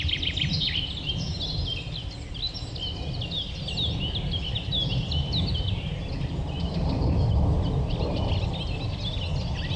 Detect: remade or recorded recorded